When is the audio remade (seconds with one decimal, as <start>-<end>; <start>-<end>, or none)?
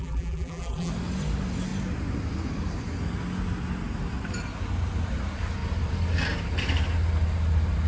0.0-0.9